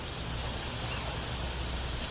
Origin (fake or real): real